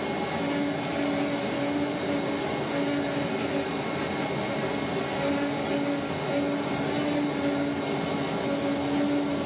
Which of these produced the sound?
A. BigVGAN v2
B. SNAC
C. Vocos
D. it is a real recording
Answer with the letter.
D